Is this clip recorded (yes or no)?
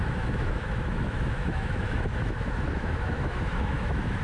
no